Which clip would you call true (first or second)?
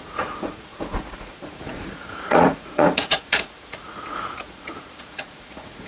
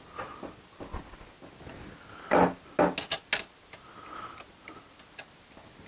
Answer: second